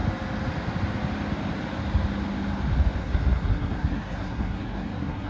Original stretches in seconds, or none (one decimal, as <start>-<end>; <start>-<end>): 0.0-3.0